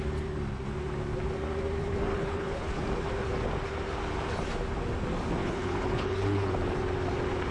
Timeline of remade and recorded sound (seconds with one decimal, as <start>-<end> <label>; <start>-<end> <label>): 0.0-2.1 recorded; 2.1-2.8 remade; 2.8-5.4 recorded; 5.4-6.5 remade; 6.5-7.5 recorded